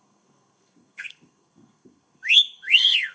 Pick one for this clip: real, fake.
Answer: fake